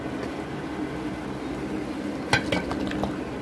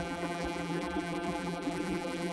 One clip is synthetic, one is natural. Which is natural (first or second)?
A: first